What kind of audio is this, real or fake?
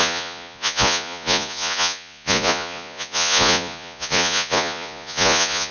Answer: fake